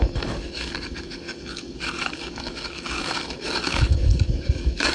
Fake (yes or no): yes